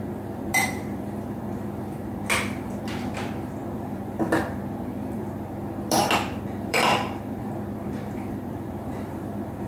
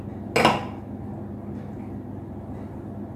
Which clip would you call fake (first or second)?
first